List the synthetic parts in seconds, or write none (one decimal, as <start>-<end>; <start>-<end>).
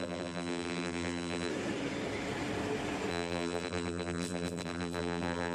0.0-1.5; 3.1-5.5